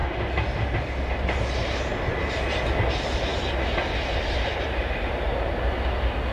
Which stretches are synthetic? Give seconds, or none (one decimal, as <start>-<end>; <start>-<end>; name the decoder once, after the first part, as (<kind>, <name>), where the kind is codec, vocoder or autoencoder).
none